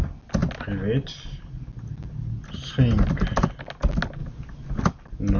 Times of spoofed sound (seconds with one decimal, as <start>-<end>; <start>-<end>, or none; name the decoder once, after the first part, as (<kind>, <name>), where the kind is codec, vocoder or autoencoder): none